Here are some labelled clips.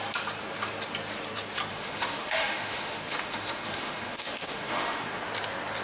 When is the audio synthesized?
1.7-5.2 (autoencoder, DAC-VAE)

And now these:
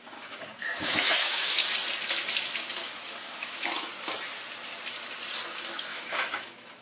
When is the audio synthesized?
0.0-1.6 (autoencoder, DAC-VAE); 2.7-3.9; 5.5-6.8